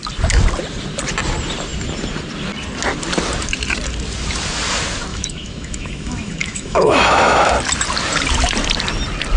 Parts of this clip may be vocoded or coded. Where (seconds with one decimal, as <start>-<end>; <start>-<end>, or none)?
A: 5.1-7.5